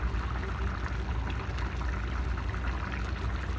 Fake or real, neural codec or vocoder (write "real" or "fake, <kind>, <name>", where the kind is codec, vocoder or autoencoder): real